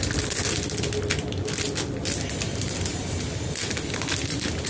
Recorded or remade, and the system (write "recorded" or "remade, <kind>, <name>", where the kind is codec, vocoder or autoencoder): recorded